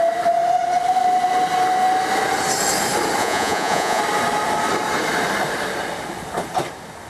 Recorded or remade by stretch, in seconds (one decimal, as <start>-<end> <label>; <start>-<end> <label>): 0.0-3.2 recorded; 3.2-4.0 remade; 4.0-7.1 recorded